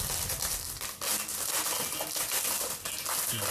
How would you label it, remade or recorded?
recorded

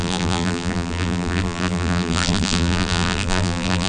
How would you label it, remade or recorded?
remade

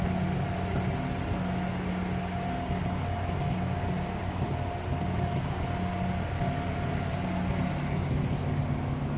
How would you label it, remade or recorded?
recorded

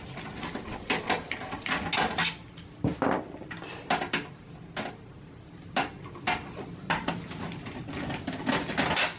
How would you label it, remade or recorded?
recorded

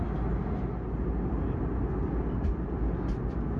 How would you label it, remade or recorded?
recorded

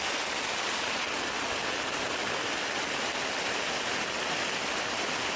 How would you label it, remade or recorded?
recorded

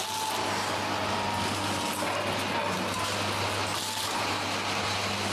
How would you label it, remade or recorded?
recorded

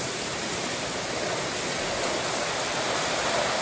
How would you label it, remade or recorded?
remade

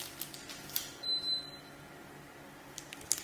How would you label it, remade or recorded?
recorded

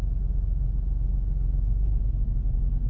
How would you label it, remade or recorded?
recorded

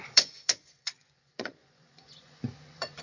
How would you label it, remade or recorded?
remade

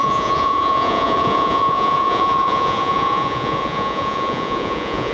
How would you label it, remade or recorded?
remade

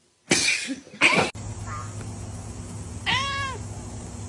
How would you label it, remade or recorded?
recorded